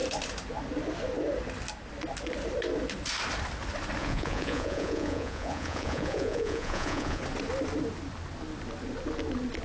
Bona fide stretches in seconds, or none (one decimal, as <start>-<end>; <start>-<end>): 0.0-4.0; 7.2-9.6